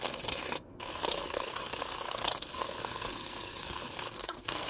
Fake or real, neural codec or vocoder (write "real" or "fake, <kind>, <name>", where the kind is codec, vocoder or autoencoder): fake, codec, SNAC